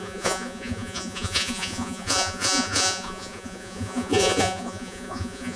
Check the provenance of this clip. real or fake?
fake